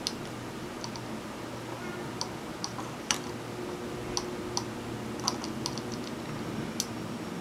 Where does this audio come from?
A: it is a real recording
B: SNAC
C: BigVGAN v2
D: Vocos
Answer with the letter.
A